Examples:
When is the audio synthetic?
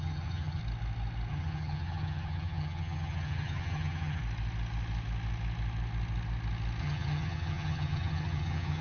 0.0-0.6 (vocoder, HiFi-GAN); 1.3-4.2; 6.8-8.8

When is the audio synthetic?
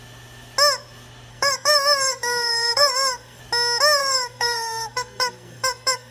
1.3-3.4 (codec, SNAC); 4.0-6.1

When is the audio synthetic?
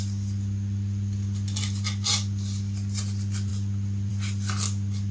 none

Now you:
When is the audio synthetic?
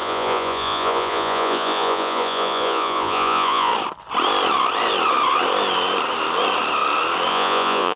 0.0-3.7 (vocoder, Vocos); 7.3-8.0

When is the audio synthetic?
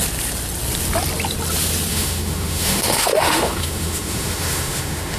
1.9-5.2 (autoencoder, DAC-VAE)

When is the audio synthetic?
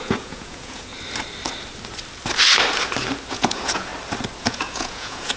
0.0-0.9 (vocoder, Vocos); 3.3-3.9; 4.4-5.4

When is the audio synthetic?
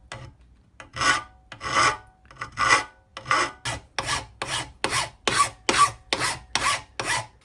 none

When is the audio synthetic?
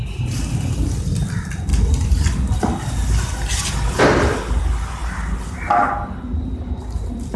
none